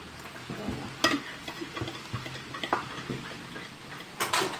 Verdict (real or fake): real